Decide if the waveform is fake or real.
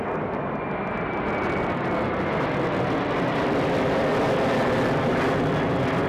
real